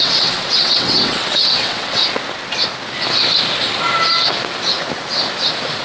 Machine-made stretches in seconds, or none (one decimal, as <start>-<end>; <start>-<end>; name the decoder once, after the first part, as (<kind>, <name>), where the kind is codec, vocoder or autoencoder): 0.0-2.0 (vocoder, WaveNeXt)